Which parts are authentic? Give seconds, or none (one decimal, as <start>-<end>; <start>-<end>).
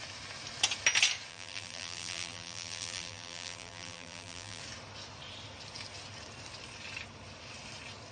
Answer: 0.0-1.3; 4.6-8.1